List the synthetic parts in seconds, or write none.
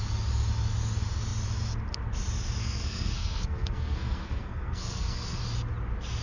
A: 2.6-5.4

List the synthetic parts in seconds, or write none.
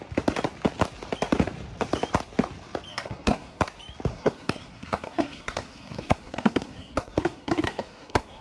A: 2.9-3.6; 4.1-8.4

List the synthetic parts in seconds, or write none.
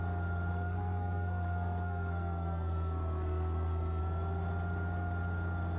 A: 0.5-4.0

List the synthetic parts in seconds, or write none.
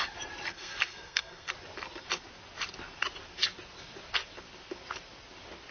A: 0.5-1.5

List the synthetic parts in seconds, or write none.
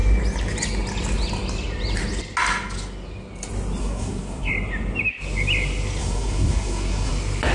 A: 3.8-4.5; 6.0-7.1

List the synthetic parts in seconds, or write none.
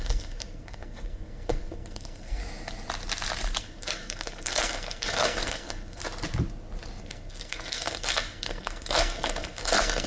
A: 0.0-2.4; 3.6-6.0; 7.0-10.1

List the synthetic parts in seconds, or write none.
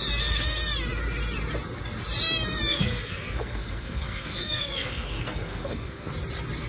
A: 2.7-6.1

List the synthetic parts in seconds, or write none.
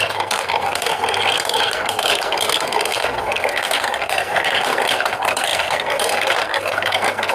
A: 0.0-7.3